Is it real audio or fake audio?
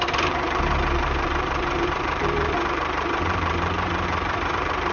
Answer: fake